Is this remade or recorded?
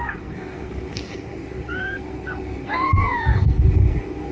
remade